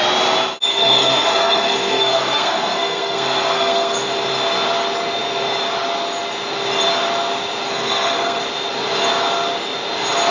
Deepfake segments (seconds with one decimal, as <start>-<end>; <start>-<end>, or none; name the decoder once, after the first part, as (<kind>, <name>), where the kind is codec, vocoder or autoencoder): 0.7-4.1 (codec, SNAC); 7.7-8.4